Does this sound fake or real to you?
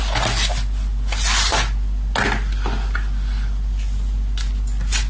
real